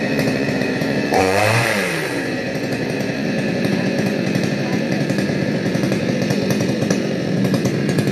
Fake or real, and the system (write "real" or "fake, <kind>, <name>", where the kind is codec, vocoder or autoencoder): fake, vocoder, Vocos